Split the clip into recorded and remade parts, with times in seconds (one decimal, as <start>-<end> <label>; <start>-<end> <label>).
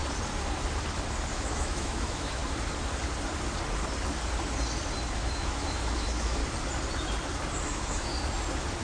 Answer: 0.0-1.3 recorded; 1.3-2.4 remade; 2.4-5.2 recorded; 5.2-6.4 remade; 6.4-7.6 recorded; 7.6-8.1 remade; 8.1-8.8 recorded